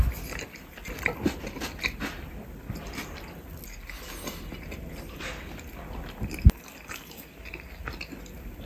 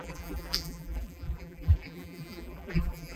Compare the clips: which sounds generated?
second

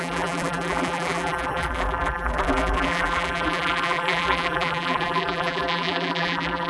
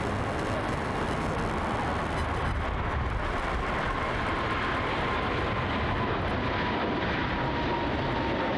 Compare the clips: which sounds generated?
first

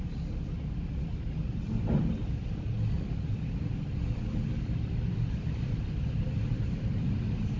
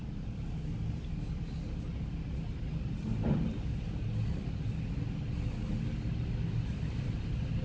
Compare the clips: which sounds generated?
first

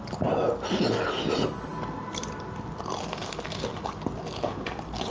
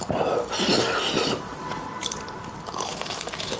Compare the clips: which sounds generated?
second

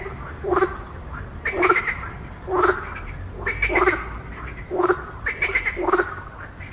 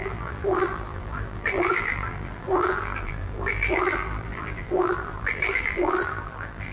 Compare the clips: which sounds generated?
second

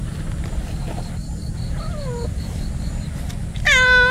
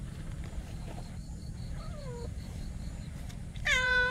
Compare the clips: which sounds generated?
second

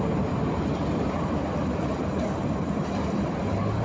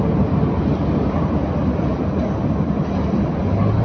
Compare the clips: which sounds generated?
first